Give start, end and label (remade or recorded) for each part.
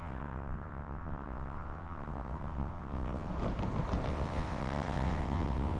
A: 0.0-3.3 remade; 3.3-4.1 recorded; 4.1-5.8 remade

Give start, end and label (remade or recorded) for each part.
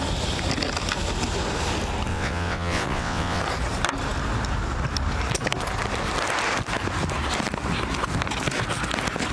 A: 0.0-2.1 recorded; 2.1-3.4 remade; 3.4-9.3 recorded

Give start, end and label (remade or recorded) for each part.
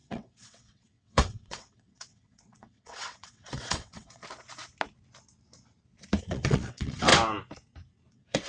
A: 0.0-4.2 remade; 4.2-6.2 recorded; 6.2-7.1 remade; 7.1-8.1 recorded; 8.1-8.5 remade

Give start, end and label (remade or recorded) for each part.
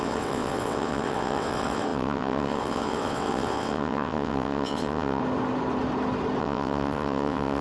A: 0.0-5.2 remade; 5.2-6.4 recorded; 6.4-7.6 remade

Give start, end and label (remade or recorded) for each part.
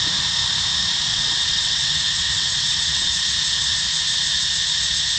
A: 0.0-1.1 recorded; 1.1-3.1 remade; 3.1-5.2 recorded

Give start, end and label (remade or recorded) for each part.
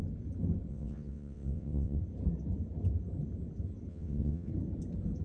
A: 0.0-0.7 recorded; 0.7-2.0 remade; 2.0-3.9 recorded; 3.9-4.5 remade; 4.5-5.2 recorded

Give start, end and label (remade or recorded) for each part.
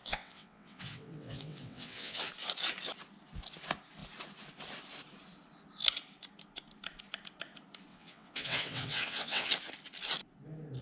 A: 0.0-2.2 remade; 2.2-7.9 recorded; 7.9-9.5 remade; 9.5-10.8 recorded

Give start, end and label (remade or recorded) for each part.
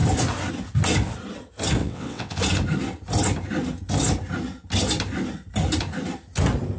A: 0.0-1.8 recorded; 1.8-2.4 remade; 2.4-6.8 recorded